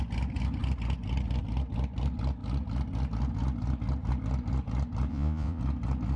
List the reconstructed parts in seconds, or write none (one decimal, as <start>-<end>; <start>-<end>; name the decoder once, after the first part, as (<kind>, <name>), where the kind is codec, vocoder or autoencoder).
5.1-5.6 (vocoder, Vocos)